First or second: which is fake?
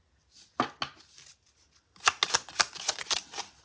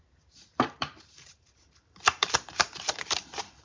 second